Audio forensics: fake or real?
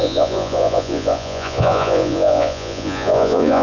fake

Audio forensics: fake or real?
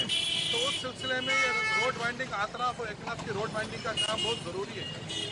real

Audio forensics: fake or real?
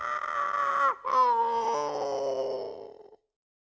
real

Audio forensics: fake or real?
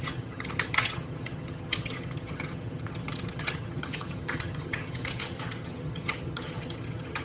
fake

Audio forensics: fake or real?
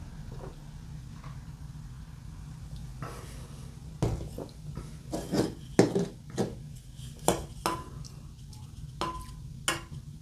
real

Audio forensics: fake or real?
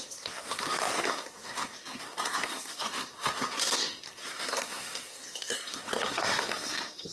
fake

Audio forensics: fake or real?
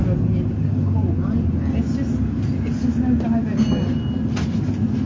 real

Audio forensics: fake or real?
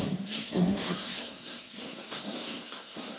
fake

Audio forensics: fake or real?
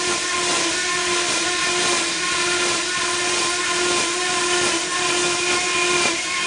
real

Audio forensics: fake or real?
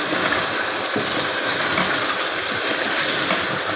real